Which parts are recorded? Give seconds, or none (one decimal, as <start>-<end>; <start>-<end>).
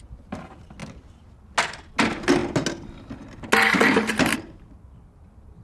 0.0-5.6